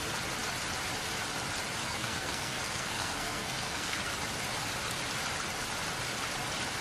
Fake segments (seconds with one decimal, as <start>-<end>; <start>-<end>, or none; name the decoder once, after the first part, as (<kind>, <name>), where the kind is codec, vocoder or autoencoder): 1.8-4.1 (codec, SNAC)